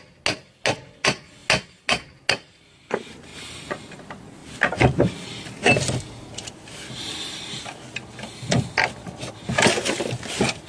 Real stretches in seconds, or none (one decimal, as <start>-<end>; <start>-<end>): 0.0-8.1; 9.3-10.7